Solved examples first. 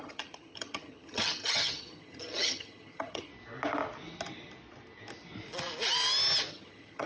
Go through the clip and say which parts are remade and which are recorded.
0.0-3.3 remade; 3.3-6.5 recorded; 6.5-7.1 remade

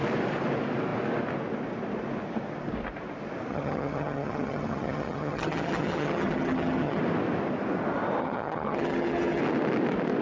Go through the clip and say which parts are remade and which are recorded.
0.0-3.5 recorded; 3.5-7.0 remade; 7.0-8.2 recorded; 8.2-9.4 remade; 9.4-10.2 recorded

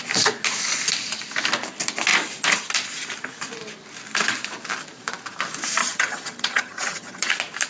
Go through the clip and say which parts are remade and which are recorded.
0.0-5.8 recorded; 5.8-7.3 remade; 7.3-7.7 recorded

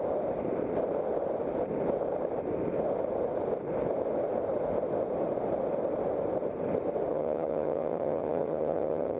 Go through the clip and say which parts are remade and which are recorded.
0.0-7.1 recorded; 7.1-9.2 remade

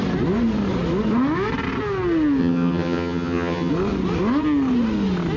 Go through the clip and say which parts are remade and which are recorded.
0.0-2.4 recorded; 2.4-3.7 remade; 3.7-5.4 recorded

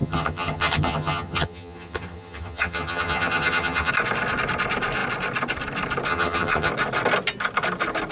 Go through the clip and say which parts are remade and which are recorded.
0.0-3.9 remade; 3.9-6.1 recorded; 6.1-6.7 remade; 6.7-8.1 recorded

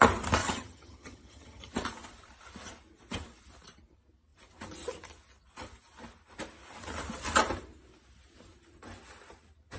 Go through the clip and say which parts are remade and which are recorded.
0.0-0.4 recorded; 0.4-1.7 remade; 1.7-9.8 recorded

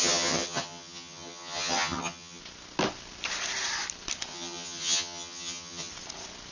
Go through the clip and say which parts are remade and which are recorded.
0.0-2.4 remade; 2.4-4.3 recorded; 4.3-5.9 remade; 5.9-6.5 recorded